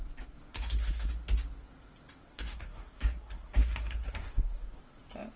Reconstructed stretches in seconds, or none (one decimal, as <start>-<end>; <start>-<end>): 0.5-1.1; 2.3-4.8